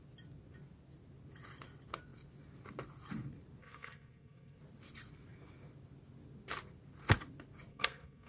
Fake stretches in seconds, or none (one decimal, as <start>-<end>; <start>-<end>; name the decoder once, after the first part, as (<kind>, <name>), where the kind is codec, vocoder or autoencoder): 3.6-4.6 (codec, SNAC); 7.7-8.3